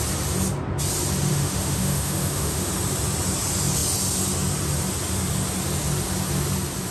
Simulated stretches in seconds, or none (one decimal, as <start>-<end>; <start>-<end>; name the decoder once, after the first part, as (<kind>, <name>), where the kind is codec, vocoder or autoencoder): 1.3-2.7 (autoencoder, DAC-VAE)